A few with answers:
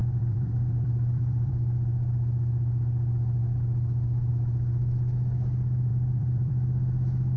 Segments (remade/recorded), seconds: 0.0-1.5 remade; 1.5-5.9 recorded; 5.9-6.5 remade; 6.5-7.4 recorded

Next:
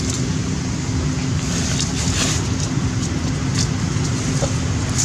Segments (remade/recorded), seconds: 0.0-5.0 recorded

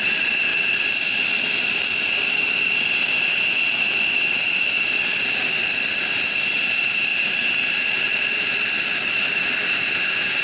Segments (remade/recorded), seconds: 0.0-0.5 recorded; 0.5-2.9 remade; 2.9-7.1 recorded; 7.1-8.7 remade; 8.7-10.4 recorded

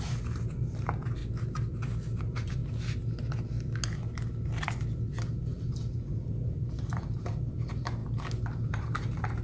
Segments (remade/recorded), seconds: 0.0-1.2 remade; 1.2-2.2 recorded; 2.2-2.6 remade; 2.6-5.3 recorded; 5.3-8.0 remade; 8.0-8.7 recorded; 8.7-9.4 remade

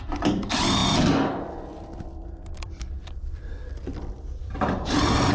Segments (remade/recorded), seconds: 0.0-0.8 remade; 0.8-1.4 recorded; 1.4-5.3 remade